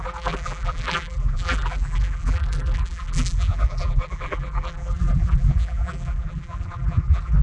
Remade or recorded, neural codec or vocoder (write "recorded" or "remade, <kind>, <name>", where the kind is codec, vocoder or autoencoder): remade, vocoder, BigVGAN v2